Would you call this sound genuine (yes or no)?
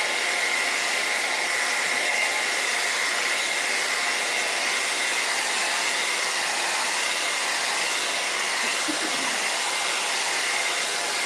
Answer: yes